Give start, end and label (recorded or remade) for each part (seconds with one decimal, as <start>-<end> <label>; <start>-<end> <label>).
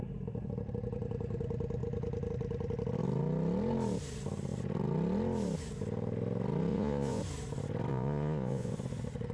0.0-6.7 recorded; 6.7-7.2 remade; 7.2-7.9 recorded; 7.9-8.7 remade; 8.7-9.3 recorded